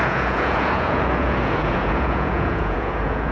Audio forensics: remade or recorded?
remade